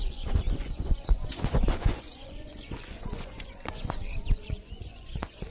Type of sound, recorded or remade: remade